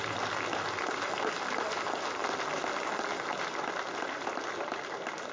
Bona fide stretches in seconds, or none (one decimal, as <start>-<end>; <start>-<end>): 0.0-5.3